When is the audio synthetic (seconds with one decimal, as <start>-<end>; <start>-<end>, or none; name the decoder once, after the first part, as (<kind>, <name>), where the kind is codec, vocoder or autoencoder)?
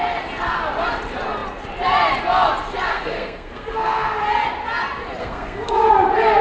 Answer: 2.9-4.2 (codec, SNAC); 5.2-5.9